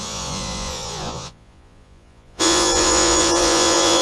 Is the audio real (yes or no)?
no